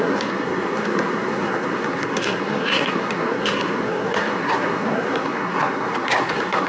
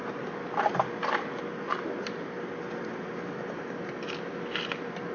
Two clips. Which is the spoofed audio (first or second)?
first